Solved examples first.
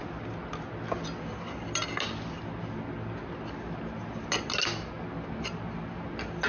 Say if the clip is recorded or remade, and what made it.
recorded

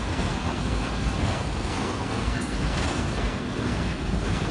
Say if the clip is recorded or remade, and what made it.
remade, codec, SNAC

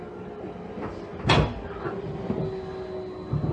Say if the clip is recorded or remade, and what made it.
recorded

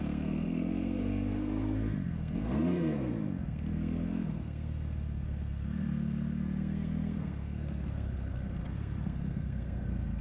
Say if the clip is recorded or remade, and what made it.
remade, codec, SNAC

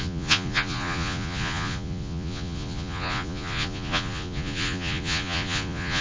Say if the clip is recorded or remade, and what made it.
remade, vocoder, Vocos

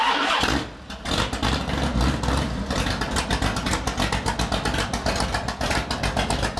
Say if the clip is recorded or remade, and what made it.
recorded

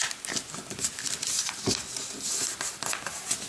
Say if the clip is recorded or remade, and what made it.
recorded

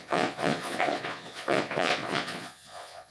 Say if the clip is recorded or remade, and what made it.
remade, vocoder, Vocos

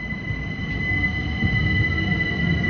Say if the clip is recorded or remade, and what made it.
recorded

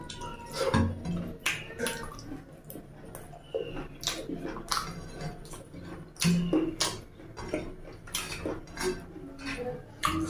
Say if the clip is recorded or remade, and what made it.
recorded